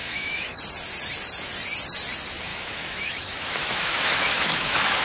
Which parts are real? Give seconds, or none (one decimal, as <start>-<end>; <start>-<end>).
0.6-2.5